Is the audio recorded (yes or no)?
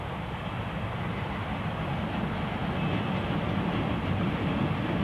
yes